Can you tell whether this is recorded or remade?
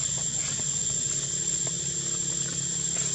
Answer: recorded